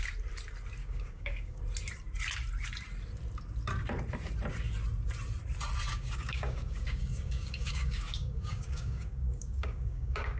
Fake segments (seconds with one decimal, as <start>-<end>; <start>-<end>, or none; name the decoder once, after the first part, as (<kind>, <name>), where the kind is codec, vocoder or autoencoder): 0.8-1.6 (codec, DAC); 5.9-10.4